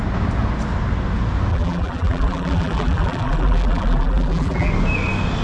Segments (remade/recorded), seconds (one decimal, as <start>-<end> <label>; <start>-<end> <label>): 0.0-1.5 recorded; 1.5-4.7 remade; 4.7-5.4 recorded